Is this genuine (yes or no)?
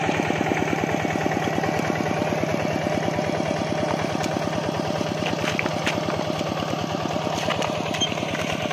yes